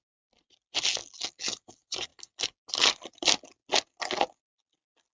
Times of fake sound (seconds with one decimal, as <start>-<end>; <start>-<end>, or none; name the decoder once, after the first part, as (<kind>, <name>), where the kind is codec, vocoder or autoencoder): none